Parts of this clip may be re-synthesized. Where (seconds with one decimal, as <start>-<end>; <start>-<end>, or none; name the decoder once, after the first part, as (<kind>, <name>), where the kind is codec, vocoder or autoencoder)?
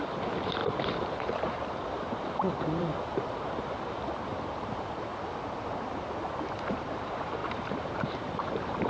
0.0-5.1 (vocoder, BigVGAN v2); 6.2-8.9